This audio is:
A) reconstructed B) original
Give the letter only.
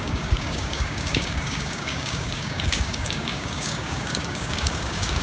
A